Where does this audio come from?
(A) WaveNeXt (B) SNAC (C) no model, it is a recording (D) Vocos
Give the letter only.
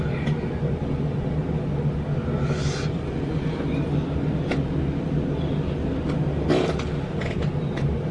C